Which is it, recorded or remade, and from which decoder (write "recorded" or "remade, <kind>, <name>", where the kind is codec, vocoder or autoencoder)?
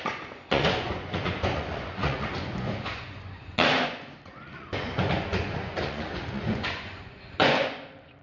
remade, vocoder, Vocos